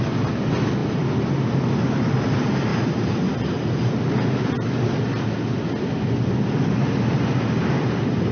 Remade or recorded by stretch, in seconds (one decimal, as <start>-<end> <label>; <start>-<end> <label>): 0.0-8.3 recorded